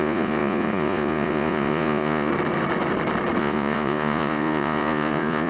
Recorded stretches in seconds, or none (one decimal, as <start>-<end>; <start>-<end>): 2.3-3.4